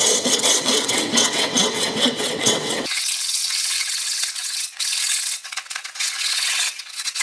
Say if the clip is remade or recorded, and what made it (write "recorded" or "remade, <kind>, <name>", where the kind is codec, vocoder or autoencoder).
remade, vocoder, WaveNeXt